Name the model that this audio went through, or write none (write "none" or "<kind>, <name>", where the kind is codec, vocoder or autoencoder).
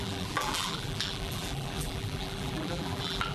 vocoder, BigVGAN v2